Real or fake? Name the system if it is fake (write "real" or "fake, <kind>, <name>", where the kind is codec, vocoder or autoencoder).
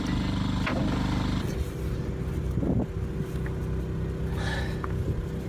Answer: real